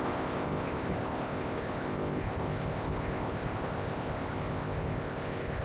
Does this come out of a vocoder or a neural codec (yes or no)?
yes